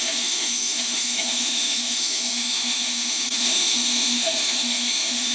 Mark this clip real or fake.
fake